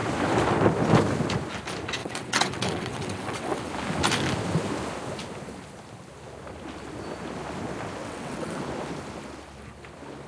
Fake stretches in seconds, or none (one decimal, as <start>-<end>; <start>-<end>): 2.0-3.7; 8.0-8.6